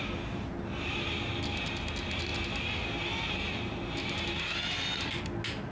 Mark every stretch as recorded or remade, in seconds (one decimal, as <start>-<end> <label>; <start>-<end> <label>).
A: 0.0-5.7 recorded